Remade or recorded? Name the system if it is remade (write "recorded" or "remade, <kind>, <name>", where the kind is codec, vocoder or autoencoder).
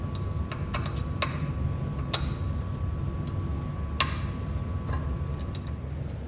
recorded